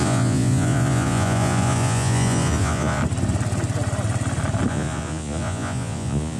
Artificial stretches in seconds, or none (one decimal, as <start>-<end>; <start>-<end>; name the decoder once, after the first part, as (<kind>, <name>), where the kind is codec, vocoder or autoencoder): 0.0-3.0 (vocoder, Vocos); 4.7-6.4